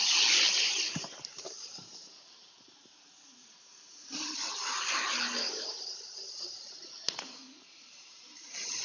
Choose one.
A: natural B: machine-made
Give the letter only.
B